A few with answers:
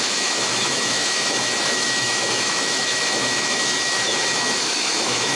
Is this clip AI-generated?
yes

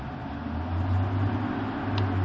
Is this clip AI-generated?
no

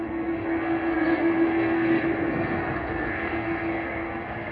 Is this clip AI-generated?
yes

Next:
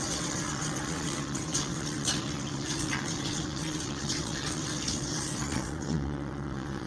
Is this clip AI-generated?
yes